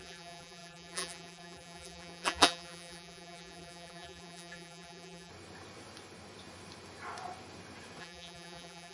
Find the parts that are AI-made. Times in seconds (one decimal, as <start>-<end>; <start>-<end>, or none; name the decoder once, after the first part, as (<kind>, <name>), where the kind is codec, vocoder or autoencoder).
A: 0.0-5.3 (vocoder, BigVGAN v2); 8.0-8.9